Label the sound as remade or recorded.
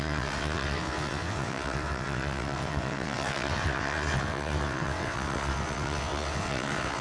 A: remade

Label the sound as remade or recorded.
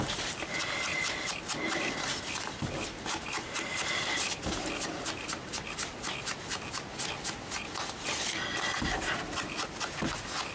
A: recorded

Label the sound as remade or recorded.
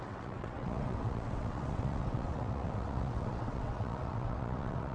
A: remade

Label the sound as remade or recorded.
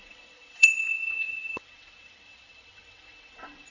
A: remade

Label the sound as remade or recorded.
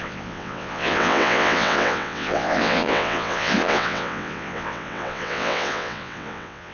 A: remade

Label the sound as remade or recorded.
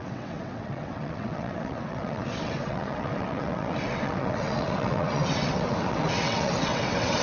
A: remade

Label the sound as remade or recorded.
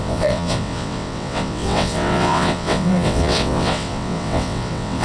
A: remade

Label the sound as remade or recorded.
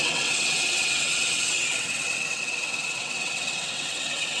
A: remade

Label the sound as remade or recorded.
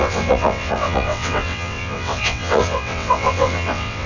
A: remade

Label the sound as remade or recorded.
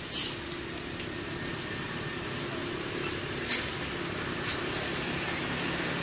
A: recorded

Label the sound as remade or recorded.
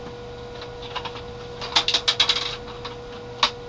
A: recorded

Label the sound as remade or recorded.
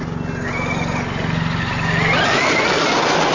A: recorded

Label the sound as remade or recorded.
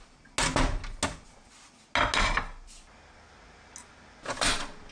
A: recorded